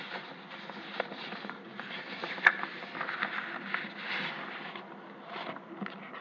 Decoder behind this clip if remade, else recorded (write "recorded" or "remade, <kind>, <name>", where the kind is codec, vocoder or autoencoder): recorded